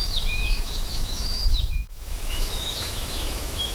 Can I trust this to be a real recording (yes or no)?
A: no